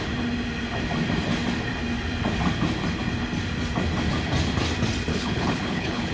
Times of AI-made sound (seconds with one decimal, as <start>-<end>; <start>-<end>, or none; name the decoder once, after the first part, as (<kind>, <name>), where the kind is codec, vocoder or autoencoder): 5.1-6.1 (codec, HILCodec)